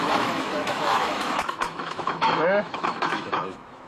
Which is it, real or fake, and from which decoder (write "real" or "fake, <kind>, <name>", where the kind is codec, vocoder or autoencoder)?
fake, autoencoder, DAC-VAE